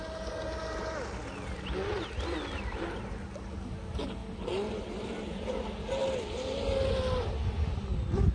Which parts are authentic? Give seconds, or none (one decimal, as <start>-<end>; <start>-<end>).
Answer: 0.0-8.3